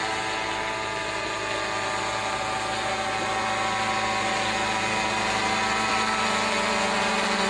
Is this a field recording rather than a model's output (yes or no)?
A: yes